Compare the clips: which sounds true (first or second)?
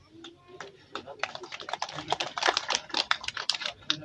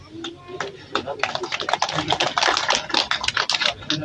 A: second